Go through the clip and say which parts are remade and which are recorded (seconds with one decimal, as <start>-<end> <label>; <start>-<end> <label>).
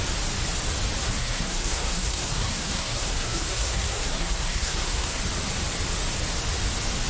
0.0-1.0 recorded; 1.0-5.2 remade; 5.2-7.1 recorded